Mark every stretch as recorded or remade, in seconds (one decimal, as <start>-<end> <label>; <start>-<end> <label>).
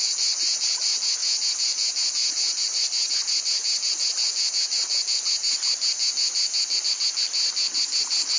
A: 0.0-8.4 recorded